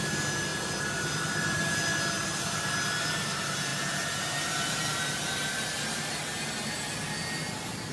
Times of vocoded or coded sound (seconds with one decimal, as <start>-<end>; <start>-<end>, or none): none